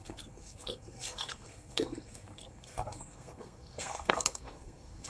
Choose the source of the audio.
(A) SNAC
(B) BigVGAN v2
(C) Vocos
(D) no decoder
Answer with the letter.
A